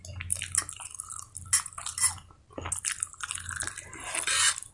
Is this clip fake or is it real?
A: real